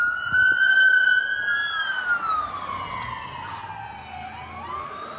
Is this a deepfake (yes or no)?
no